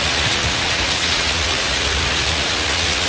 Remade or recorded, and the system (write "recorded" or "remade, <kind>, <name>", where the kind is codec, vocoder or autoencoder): remade, vocoder, Vocos